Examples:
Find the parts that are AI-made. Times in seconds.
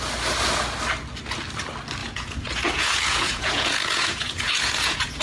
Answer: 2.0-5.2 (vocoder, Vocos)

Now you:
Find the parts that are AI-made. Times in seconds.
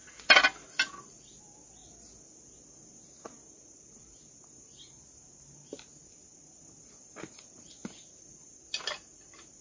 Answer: none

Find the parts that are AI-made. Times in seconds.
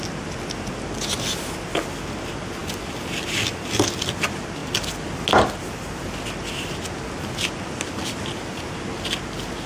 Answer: none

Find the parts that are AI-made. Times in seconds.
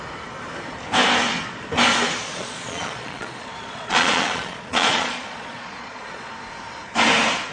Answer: 2.2-6.3 (vocoder, Vocos)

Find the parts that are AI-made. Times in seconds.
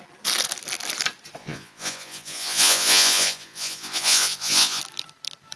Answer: 1.4-4.8 (vocoder, Vocos)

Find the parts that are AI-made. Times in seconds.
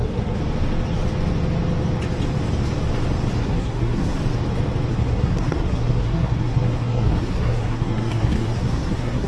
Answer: 0.0-0.4 (codec, SNAC); 3.4-4.2; 4.9-9.3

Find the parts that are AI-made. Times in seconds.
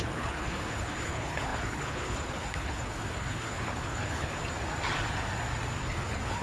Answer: 0.0-4.4 (codec, HILCodec); 5.8-6.4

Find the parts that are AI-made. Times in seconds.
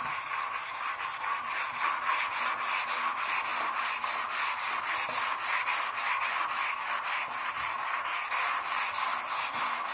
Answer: none